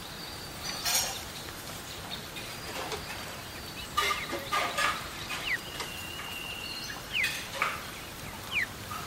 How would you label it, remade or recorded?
remade